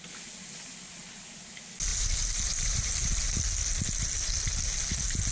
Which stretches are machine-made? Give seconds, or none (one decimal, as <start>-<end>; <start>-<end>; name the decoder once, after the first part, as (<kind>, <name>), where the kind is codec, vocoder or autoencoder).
1.9-3.3 (vocoder, BigVGAN v2)